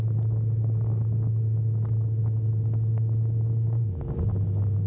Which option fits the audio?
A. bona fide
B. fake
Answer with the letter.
A